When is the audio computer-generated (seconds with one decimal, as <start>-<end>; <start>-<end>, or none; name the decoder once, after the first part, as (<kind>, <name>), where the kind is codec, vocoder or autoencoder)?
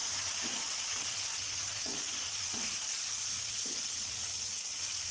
0.0-5.1 (vocoder, Vocos)